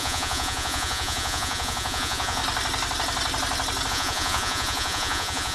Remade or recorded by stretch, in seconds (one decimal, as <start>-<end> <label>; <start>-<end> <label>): 0.0-2.4 remade; 2.4-3.9 recorded; 3.9-5.5 remade